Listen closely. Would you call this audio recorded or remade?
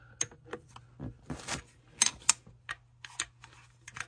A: recorded